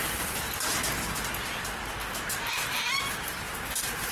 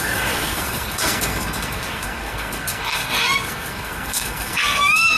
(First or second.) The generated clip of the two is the second